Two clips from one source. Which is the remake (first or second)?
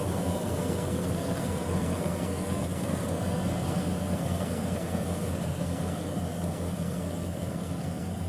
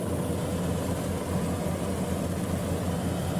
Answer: first